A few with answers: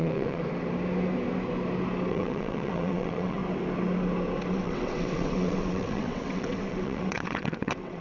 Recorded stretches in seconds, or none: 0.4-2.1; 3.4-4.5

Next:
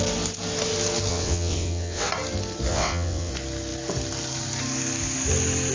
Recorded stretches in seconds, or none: 0.0-1.1; 2.1-2.7; 3.3-5.7

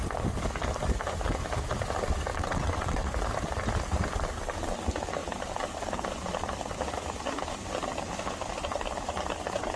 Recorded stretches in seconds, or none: 0.0-2.3; 3.1-9.8

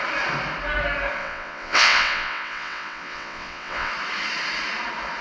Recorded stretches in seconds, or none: 0.0-1.2; 3.9-5.2